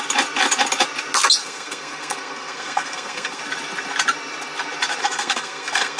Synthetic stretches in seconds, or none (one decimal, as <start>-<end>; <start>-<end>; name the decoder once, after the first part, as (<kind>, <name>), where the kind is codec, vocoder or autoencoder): 1.4-3.4 (codec, SNAC); 5.0-6.0